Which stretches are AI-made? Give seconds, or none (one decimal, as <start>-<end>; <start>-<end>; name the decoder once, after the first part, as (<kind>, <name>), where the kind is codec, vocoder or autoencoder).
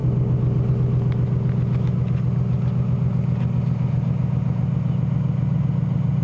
none